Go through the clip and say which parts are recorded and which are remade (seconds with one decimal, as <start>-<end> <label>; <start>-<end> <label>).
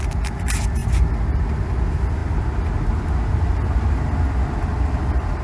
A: 0.0-5.4 recorded